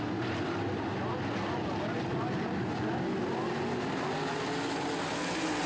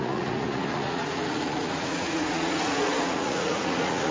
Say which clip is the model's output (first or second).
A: second